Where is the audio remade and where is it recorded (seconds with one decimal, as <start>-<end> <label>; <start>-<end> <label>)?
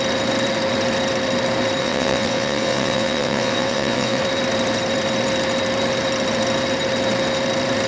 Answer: 0.0-1.8 recorded; 1.8-4.2 remade; 4.2-7.9 recorded